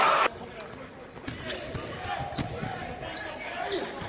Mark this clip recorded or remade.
recorded